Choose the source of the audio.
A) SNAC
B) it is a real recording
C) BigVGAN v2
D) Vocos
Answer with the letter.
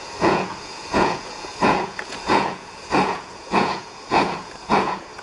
D